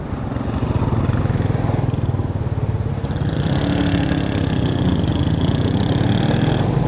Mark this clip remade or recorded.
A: recorded